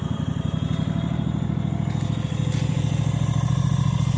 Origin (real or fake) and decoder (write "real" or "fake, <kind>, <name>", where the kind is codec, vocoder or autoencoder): real